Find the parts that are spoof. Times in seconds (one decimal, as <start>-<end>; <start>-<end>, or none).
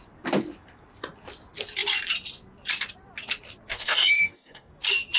3.7-4.7